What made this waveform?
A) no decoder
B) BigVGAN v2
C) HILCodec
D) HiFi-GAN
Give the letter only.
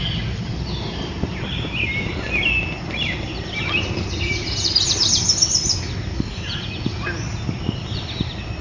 A